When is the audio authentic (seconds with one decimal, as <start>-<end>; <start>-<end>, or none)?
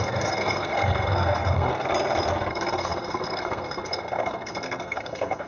1.7-2.5